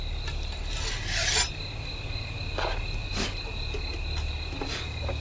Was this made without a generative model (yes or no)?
yes